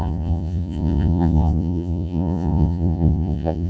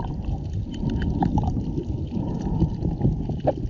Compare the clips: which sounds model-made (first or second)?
first